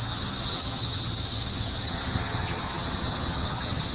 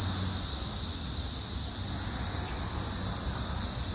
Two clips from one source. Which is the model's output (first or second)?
first